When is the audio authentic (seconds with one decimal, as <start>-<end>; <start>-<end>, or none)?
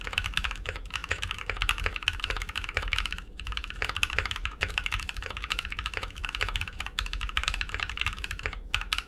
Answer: none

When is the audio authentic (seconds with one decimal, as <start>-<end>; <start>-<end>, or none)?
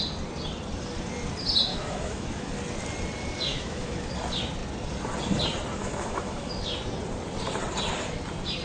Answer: 0.0-1.7; 2.5-3.5; 4.1-5.8; 6.5-8.6